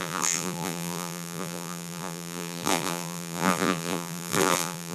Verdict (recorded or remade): remade